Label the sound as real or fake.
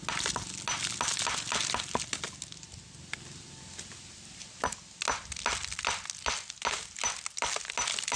real